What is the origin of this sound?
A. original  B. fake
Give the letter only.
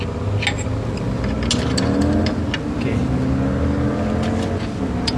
A